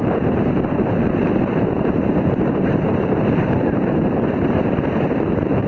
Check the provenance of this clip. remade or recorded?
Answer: remade